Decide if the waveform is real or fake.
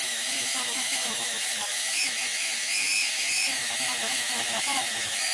fake